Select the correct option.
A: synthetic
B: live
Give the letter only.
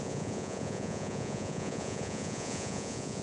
A